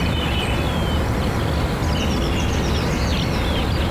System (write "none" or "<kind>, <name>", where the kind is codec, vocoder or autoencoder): none